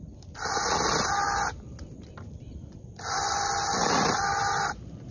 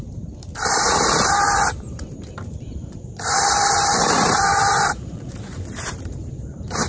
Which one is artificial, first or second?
second